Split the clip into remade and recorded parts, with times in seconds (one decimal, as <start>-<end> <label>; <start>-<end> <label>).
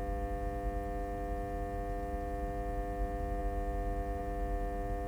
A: 0.0-5.1 recorded